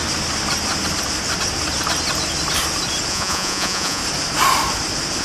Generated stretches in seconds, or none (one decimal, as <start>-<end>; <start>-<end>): 3.1-4.0

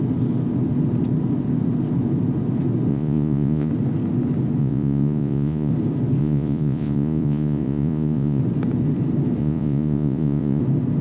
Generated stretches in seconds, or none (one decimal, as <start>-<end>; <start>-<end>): 2.9-3.7; 4.6-5.7; 6.2-8.4; 9.4-10.6

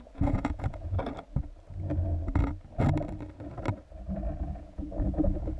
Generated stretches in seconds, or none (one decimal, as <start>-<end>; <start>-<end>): 0.0-1.0; 4.4-5.6

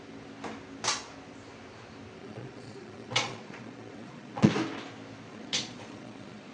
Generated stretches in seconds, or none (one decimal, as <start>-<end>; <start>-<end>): 2.2-4.5; 5.3-6.5

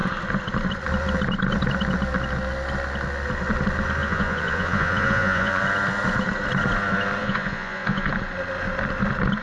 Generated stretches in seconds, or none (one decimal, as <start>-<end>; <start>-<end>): 4.0-5.6; 7.2-8.1

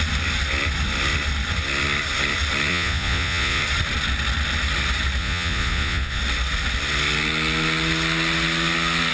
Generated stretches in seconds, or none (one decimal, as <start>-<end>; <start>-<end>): 2.7-3.6; 5.2-6.2

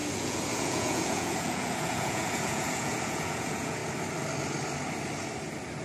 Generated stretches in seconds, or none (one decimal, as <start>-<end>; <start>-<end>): 0.0-3.8

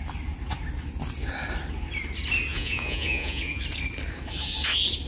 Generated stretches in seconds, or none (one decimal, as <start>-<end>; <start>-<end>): 2.5-3.6